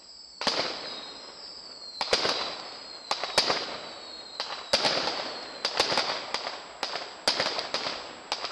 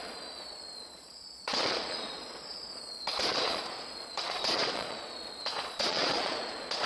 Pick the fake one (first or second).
second